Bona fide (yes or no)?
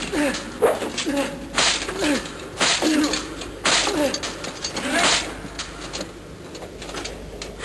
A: yes